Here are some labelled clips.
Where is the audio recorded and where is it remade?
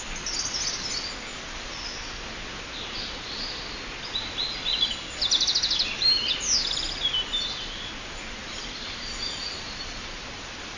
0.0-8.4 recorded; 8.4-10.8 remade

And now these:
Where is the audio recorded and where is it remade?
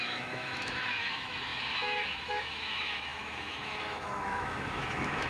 0.0-5.3 remade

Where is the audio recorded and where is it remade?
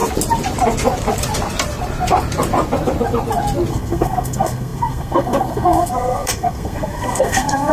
0.0-3.7 recorded; 3.7-7.7 remade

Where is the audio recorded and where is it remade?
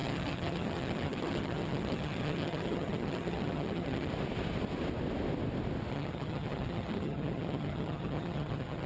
0.0-4.1 remade; 4.1-5.9 recorded; 5.9-8.9 remade